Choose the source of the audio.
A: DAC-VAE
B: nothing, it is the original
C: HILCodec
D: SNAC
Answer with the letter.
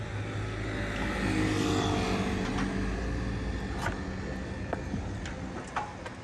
B